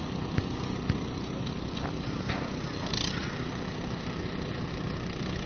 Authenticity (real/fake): real